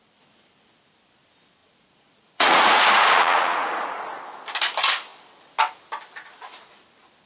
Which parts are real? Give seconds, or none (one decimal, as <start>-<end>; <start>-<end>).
0.0-1.6; 4.2-7.3